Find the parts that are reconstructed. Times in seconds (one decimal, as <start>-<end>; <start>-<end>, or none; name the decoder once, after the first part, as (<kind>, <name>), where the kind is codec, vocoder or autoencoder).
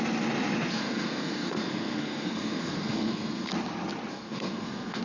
0.7-3.5 (codec, SNAC); 4.1-5.0